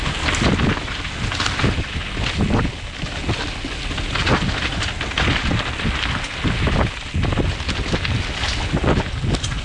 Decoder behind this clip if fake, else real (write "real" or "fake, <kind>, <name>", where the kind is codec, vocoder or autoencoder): real